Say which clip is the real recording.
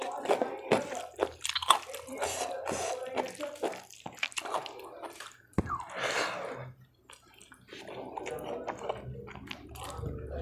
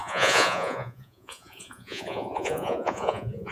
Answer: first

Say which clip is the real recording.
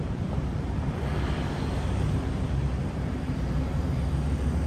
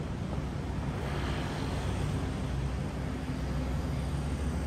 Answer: second